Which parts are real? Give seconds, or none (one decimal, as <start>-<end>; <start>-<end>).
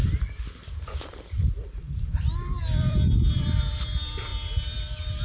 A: none